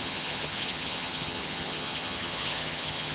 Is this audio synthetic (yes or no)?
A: yes